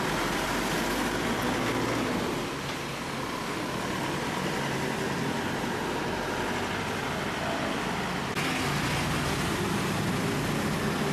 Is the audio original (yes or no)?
yes